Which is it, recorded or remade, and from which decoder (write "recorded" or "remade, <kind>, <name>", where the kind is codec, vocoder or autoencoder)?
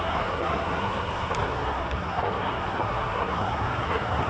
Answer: remade, codec, SNAC